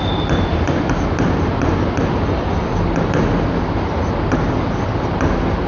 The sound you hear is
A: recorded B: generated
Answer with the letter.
A